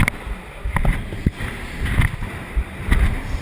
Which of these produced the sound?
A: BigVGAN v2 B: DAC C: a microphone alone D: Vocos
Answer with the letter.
C